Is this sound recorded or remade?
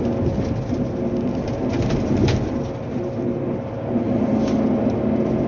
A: recorded